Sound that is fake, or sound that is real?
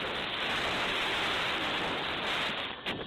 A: real